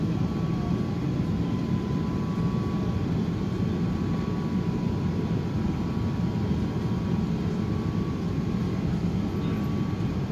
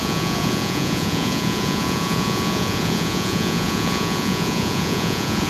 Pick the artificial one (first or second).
second